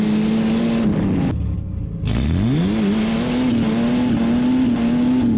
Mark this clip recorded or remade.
recorded